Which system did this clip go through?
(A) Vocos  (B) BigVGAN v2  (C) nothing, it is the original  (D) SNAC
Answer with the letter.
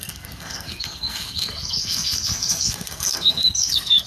D